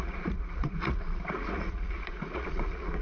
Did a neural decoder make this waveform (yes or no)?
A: yes